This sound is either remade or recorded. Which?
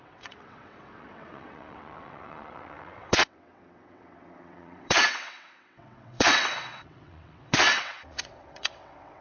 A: remade